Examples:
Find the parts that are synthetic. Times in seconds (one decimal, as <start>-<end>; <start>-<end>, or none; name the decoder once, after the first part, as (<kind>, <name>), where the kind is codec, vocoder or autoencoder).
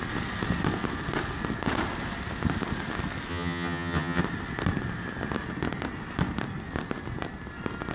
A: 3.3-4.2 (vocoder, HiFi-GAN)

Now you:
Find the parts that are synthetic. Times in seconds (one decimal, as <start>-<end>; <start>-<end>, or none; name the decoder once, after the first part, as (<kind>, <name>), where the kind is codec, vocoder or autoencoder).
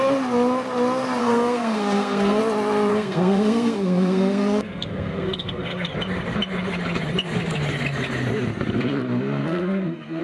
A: 1.2-2.4 (codec, SNAC); 2.9-5.9; 9.4-10.2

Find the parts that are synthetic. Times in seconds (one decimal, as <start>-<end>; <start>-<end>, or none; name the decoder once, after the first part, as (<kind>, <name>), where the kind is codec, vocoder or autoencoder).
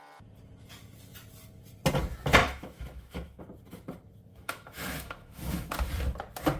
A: 2.4-3.4 (autoencoder, DAC-VAE); 4.3-5.7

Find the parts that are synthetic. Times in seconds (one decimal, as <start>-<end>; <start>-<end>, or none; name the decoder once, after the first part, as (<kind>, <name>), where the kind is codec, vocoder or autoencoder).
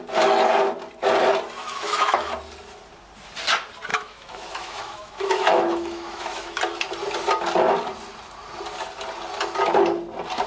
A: 1.6-2.3 (autoencoder, DAC-VAE); 3.9-6.6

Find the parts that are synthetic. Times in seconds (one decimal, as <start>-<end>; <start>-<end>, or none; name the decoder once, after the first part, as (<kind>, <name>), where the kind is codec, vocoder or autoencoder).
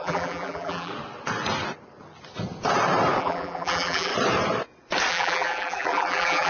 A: 0.0-0.9 (vocoder, BigVGAN v2); 3.2-4.1; 5.1-6.5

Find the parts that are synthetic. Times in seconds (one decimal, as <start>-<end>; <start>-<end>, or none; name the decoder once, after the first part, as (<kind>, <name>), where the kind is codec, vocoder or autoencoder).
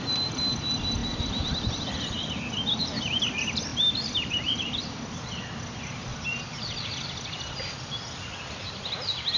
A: 0.0-1.0 (vocoder, BigVGAN v2); 3.0-9.4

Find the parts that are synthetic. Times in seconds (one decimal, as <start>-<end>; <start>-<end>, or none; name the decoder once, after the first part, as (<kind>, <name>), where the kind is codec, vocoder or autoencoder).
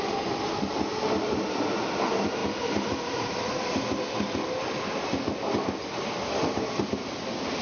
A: none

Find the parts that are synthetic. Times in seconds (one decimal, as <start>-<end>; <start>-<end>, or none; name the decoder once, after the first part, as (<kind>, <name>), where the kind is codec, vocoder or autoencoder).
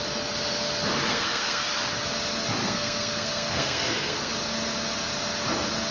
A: 1.1-1.7 (codec, SNAC); 2.6-4.3